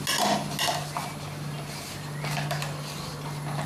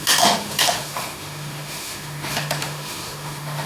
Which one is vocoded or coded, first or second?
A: second